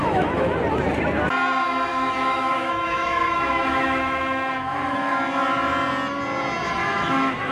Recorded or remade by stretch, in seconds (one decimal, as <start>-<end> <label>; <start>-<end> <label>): 0.0-0.5 remade; 0.5-1.9 recorded; 1.9-5.2 remade; 5.2-6.8 recorded; 6.8-7.5 remade